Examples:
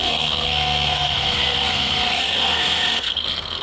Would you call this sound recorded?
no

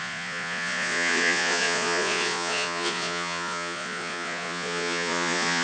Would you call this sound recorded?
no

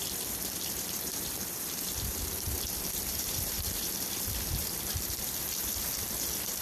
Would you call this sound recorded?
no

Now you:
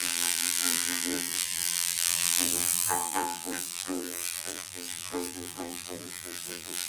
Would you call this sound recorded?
no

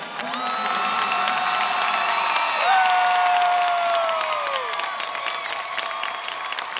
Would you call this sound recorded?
yes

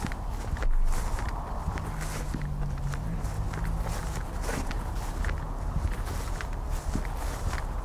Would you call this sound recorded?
yes